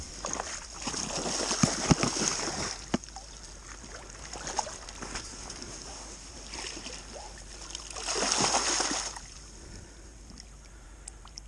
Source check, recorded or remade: recorded